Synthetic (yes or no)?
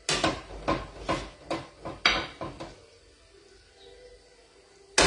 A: no